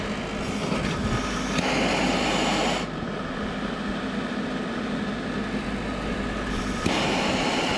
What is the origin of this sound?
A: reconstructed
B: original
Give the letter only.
B